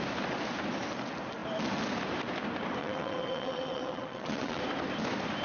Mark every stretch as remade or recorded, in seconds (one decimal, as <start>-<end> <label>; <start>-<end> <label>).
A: 0.0-2.8 recorded; 2.8-4.6 remade; 4.6-5.4 recorded